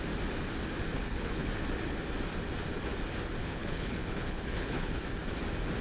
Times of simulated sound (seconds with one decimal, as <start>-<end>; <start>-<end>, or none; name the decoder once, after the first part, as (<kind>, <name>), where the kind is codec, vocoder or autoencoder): 1.0-1.5 (codec, HILCodec); 3.4-5.0